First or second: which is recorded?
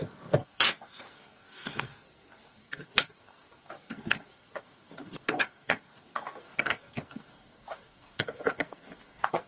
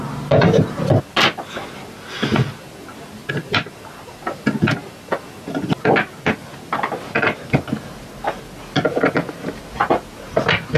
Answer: second